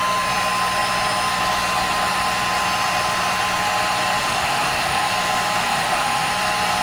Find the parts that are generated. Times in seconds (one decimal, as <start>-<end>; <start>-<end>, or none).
4.2-5.1; 5.6-6.3